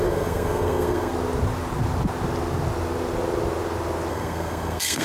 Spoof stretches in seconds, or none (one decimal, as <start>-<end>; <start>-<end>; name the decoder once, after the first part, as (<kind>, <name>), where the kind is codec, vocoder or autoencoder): 0.0-1.1 (codec, SNAC); 4.1-5.0